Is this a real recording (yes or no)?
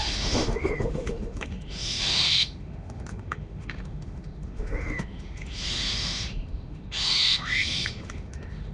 no